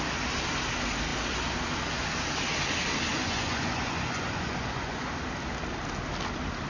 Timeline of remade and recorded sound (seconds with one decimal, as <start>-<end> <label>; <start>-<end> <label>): 0.0-3.1 recorded; 3.1-5.1 remade; 5.1-6.7 recorded

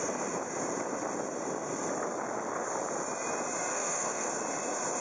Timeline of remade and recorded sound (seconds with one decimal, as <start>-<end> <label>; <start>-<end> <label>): 0.0-3.7 recorded; 3.7-4.3 remade; 4.3-5.0 recorded

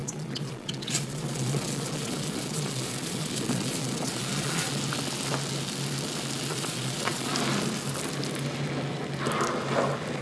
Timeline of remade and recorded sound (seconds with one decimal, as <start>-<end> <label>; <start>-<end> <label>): 0.0-4.8 remade; 4.8-6.5 recorded; 6.5-7.3 remade; 7.3-10.2 recorded